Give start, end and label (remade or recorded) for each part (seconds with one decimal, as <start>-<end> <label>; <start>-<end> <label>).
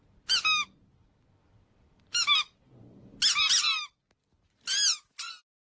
0.0-5.7 recorded